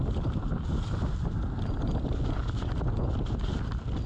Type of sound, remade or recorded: recorded